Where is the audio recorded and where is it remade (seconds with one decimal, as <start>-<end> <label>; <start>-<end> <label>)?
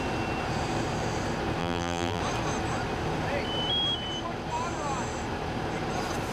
0.0-1.6 recorded; 1.6-2.2 remade; 2.2-6.3 recorded